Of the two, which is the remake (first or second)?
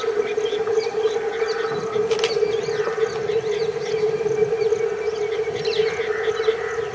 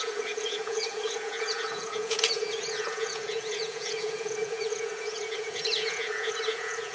second